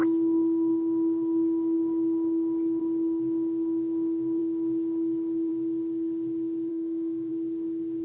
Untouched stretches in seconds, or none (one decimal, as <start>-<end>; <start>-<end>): 0.0-6.7; 7.3-8.0